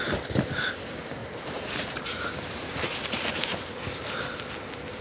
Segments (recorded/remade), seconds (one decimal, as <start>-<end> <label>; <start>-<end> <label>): 0.0-1.2 recorded; 1.2-4.2 remade; 4.2-5.0 recorded